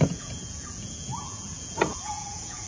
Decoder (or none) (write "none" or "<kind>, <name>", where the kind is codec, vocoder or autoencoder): vocoder, Vocos